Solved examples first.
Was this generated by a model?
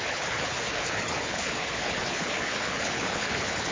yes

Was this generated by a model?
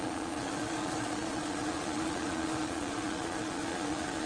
yes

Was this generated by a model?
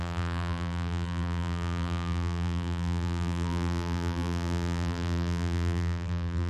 yes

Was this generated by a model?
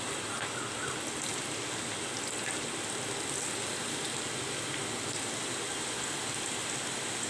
no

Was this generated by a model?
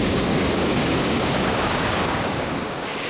yes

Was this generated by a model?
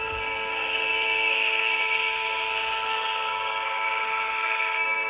yes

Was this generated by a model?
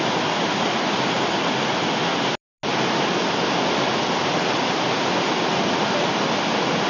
no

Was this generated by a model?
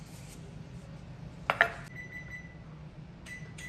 no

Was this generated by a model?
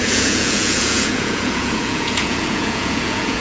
yes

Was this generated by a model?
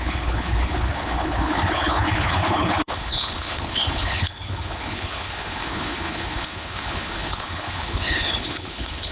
yes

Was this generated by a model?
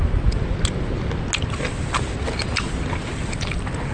no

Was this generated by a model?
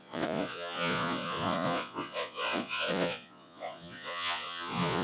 yes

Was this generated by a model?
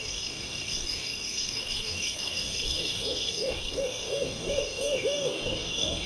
yes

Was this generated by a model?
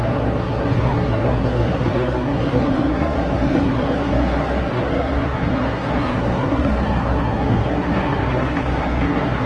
yes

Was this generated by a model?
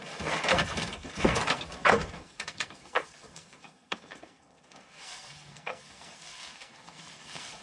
yes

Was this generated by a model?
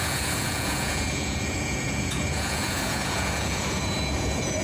yes